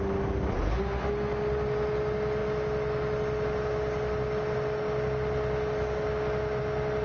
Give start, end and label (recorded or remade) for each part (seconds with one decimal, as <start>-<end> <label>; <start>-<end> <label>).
0.0-7.0 recorded